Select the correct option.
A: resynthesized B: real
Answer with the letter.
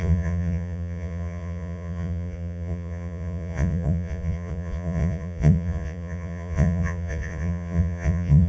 A